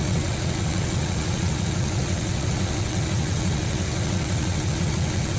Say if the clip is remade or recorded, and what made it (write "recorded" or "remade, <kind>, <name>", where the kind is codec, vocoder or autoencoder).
remade, vocoder, WaveNeXt